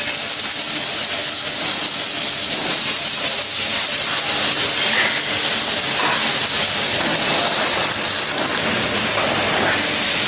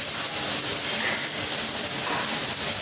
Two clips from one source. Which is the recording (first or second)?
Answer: first